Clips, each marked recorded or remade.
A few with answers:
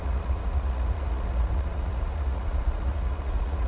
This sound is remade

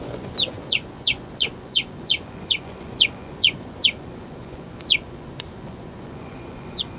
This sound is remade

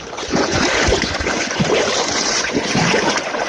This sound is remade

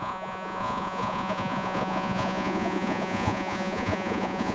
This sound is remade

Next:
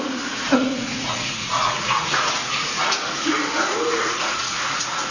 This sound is remade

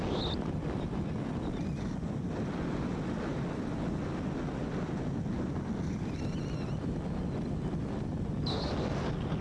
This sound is recorded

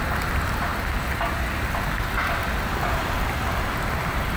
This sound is recorded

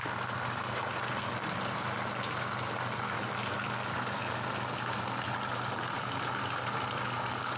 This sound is recorded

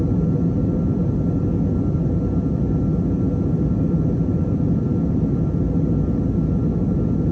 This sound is recorded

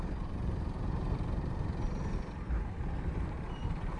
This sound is recorded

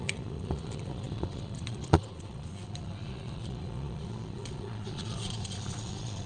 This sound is remade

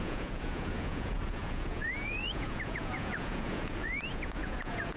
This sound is remade